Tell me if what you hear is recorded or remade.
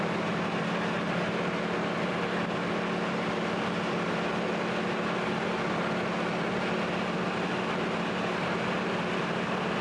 recorded